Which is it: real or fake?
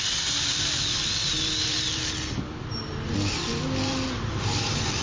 fake